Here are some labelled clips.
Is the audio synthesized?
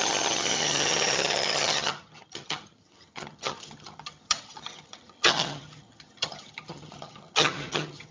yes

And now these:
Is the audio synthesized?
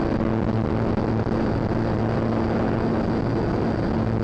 no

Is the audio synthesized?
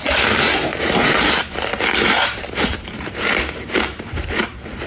yes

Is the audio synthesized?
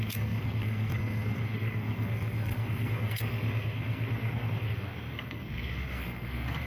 yes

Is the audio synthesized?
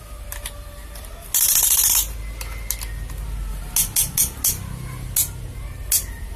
no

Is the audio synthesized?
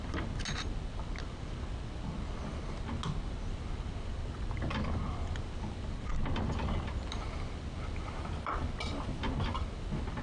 no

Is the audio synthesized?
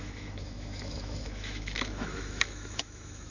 yes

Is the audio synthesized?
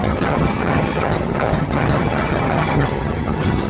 yes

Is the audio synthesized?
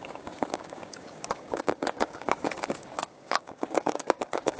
yes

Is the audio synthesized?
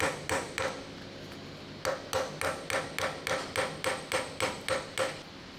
no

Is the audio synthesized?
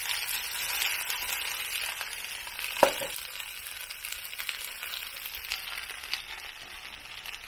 no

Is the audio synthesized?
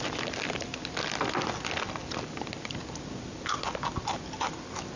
no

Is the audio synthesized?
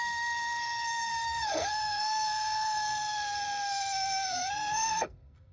yes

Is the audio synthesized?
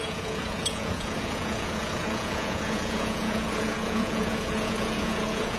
yes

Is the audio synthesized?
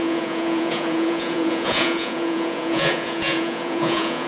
yes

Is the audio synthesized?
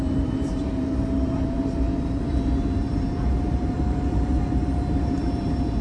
yes